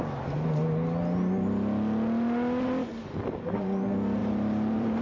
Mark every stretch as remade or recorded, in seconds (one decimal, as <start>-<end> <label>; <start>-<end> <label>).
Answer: 0.0-4.2 recorded; 4.2-5.0 remade